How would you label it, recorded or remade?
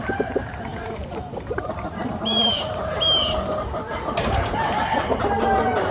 remade